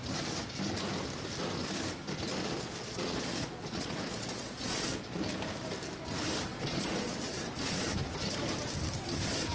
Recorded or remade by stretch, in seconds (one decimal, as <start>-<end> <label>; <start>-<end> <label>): 0.0-2.4 recorded; 2.4-5.2 remade; 5.2-6.5 recorded; 6.5-7.5 remade; 7.5-9.5 recorded